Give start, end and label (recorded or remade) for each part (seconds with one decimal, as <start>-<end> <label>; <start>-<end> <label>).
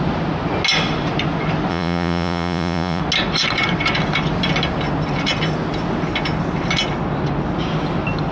0.0-1.7 recorded; 1.7-3.0 remade; 3.0-8.3 recorded